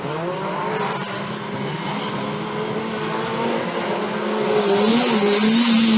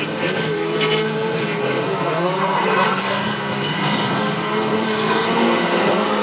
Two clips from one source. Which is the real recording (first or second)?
first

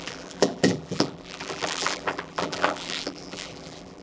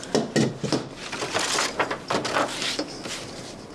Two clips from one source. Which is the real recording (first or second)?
second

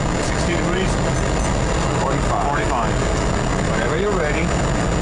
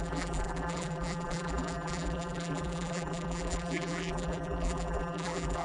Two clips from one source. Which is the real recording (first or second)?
first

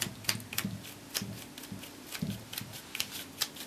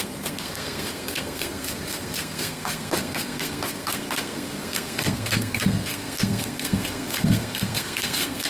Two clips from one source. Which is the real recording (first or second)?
first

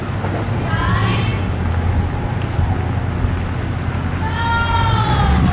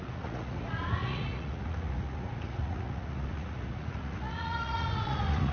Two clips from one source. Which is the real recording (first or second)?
first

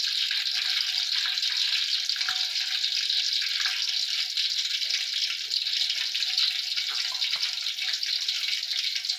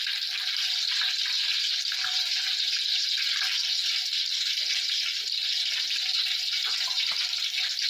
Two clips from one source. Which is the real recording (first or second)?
first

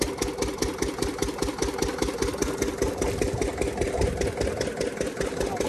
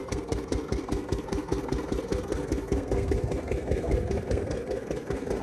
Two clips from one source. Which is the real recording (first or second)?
first